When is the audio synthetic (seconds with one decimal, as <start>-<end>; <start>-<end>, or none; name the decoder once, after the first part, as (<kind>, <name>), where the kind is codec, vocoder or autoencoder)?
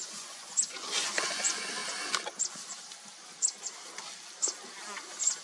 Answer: 0.0-1.8 (vocoder, Vocos); 5.0-5.4